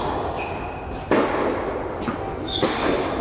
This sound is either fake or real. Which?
real